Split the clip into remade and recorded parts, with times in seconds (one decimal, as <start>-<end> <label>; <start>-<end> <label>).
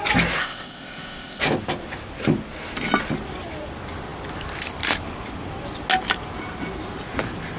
0.0-0.4 recorded; 0.4-1.4 remade; 1.4-7.6 recorded